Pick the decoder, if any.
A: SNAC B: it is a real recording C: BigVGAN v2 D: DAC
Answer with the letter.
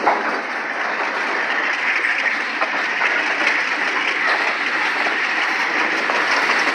B